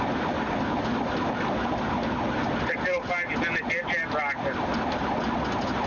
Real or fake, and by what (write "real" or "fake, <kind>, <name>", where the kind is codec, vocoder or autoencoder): real